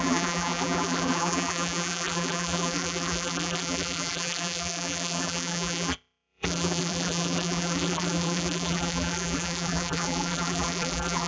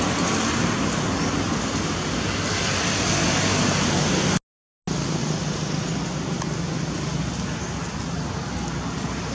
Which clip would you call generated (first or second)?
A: first